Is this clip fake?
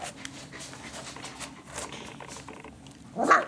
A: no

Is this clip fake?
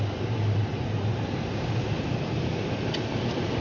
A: no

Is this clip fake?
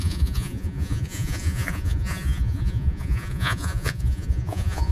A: yes